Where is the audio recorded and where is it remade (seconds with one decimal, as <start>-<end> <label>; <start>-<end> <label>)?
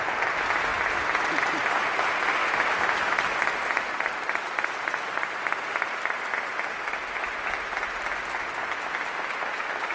0.0-9.9 recorded